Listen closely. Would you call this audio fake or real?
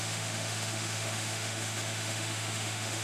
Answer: fake